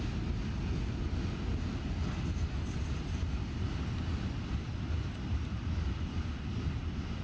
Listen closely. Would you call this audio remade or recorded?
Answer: recorded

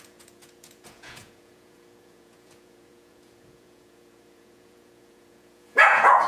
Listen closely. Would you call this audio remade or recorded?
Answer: remade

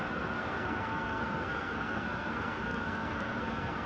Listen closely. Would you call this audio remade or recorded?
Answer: remade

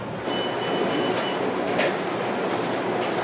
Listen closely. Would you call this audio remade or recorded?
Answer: recorded